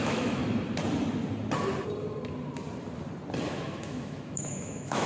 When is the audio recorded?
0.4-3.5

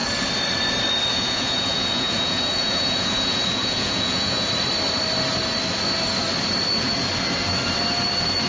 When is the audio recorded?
0.0-1.1; 4.5-8.5

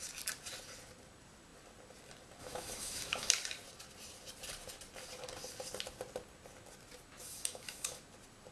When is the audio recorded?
0.0-2.4; 3.3-7.2; 8.0-8.5

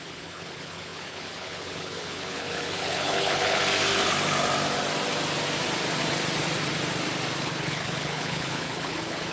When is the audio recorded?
3.6-7.4